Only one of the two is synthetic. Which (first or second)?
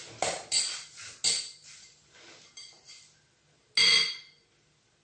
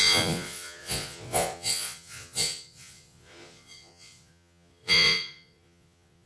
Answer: second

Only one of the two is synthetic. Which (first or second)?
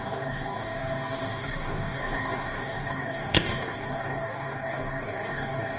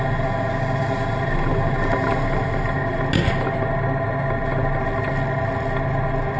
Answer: first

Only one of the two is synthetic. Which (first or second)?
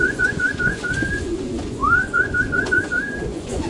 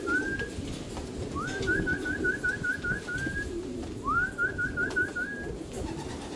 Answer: first